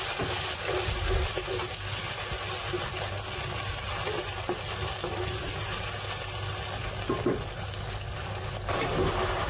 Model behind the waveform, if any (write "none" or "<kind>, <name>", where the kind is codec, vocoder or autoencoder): none